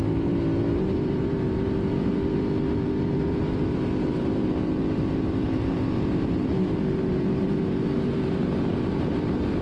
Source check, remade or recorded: remade